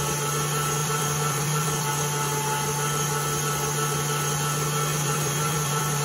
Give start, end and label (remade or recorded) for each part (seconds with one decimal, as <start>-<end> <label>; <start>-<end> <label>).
0.0-0.8 recorded; 0.8-1.9 remade; 1.9-4.9 recorded; 4.9-6.0 remade